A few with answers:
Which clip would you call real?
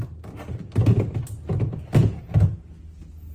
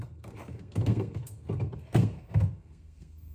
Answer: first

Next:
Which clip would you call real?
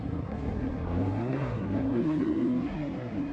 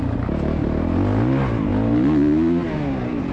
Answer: second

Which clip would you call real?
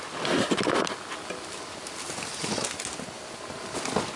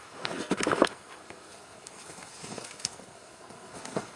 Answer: first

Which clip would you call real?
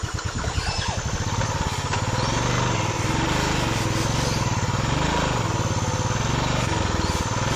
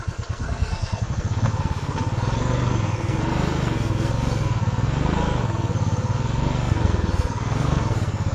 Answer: first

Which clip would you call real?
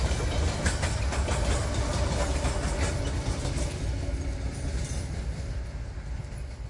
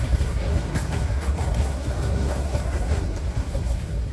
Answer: first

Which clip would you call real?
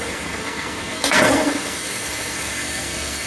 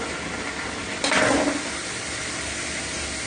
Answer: second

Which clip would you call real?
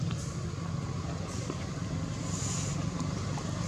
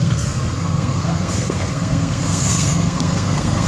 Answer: first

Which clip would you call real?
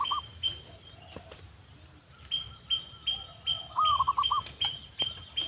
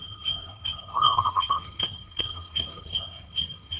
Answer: first